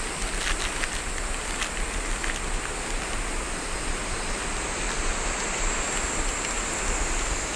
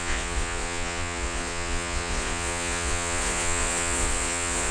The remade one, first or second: second